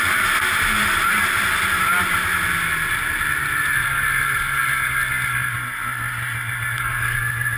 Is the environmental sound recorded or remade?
recorded